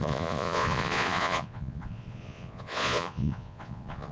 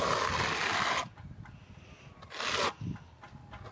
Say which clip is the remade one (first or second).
first